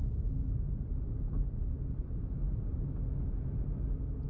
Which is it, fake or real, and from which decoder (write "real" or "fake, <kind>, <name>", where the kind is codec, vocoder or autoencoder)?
real